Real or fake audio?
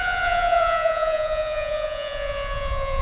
fake